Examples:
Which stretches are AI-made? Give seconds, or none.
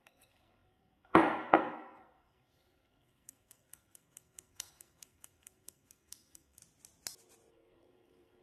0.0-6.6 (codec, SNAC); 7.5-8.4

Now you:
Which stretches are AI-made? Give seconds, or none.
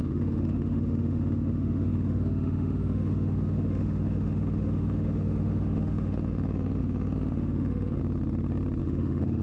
0.0-8.0 (autoencoder, DAC-VAE); 8.8-9.4